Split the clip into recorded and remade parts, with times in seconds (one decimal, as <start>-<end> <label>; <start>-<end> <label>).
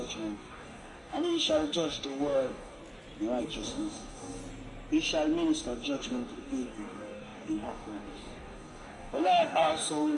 0.0-2.8 remade; 2.8-3.4 recorded; 3.4-4.4 remade; 4.4-5.6 recorded; 5.6-10.2 remade